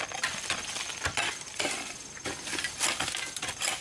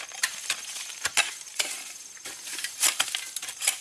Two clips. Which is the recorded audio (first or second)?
first